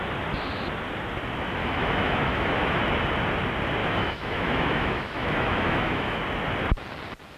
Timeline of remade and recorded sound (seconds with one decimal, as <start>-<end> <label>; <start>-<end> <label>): 0.0-1.6 recorded; 1.6-2.8 remade; 2.8-3.8 recorded; 3.8-6.2 remade; 6.2-7.4 recorded